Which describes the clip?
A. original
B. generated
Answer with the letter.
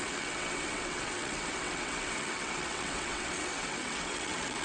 B